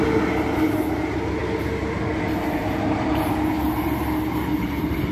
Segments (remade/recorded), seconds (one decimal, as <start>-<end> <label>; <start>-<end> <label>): 0.0-5.1 recorded